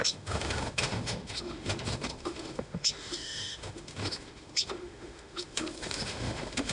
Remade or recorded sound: remade